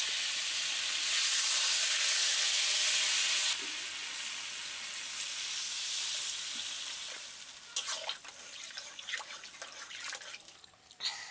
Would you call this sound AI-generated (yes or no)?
no